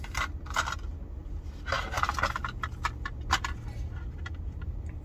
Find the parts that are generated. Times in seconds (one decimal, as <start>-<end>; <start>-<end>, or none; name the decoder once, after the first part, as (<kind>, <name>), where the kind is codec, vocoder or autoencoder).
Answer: none